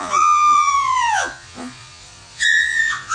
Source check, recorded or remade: remade